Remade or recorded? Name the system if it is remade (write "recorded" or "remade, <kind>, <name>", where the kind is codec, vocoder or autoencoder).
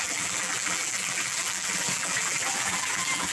remade, vocoder, BigVGAN v2